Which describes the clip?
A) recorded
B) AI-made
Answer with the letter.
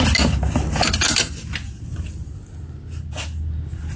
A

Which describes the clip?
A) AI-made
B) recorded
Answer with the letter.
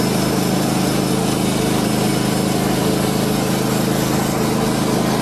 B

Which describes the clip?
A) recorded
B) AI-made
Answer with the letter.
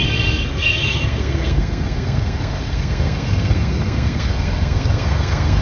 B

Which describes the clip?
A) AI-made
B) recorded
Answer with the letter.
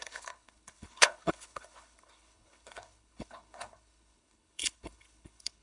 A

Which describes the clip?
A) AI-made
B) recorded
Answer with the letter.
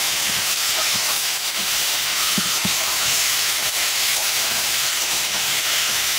A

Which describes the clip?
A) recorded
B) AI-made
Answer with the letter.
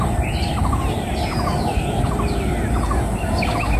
A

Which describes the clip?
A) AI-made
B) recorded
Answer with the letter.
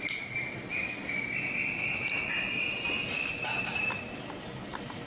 B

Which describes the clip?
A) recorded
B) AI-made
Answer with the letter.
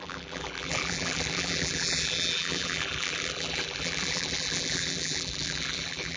B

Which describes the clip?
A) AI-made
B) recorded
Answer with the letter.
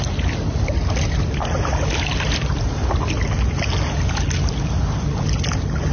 B